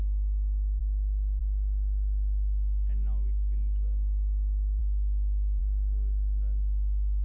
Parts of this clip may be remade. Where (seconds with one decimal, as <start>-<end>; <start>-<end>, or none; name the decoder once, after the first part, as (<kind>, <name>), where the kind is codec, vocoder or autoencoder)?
none